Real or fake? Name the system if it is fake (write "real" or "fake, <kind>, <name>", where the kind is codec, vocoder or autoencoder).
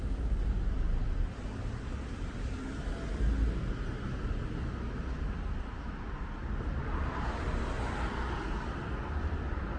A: real